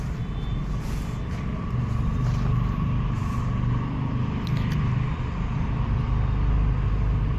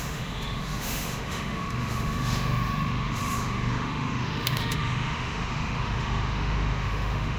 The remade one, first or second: second